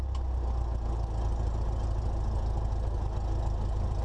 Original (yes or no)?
yes